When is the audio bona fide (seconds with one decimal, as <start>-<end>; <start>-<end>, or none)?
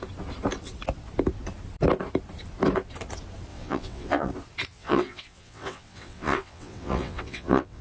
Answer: 0.0-3.5; 4.3-4.7